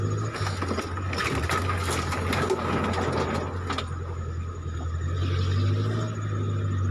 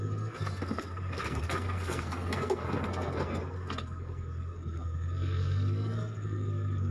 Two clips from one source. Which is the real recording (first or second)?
first